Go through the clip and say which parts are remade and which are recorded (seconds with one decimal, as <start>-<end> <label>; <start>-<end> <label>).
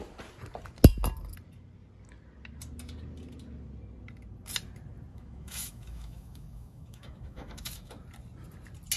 0.0-5.1 recorded; 5.1-7.9 remade; 7.9-9.0 recorded